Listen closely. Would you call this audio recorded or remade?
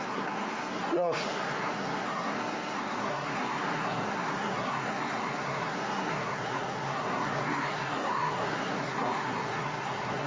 remade